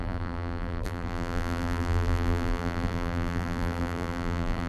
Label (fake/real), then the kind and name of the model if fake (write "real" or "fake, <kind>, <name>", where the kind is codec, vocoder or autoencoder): fake, vocoder, BigVGAN v2